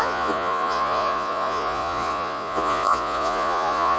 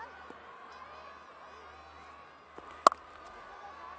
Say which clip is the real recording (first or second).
second